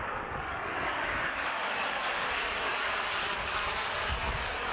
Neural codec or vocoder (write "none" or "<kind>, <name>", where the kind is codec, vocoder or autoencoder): codec, DAC